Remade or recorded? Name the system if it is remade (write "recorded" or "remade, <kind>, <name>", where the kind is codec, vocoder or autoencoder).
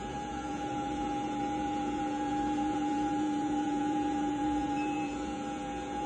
remade, vocoder, Vocos